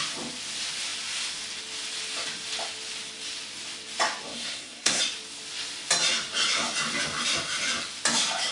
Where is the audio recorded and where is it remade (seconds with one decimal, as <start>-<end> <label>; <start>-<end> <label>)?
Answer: 0.0-4.3 recorded; 4.3-5.0 remade; 5.0-8.5 recorded